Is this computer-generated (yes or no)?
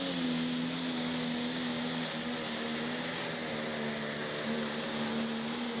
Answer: no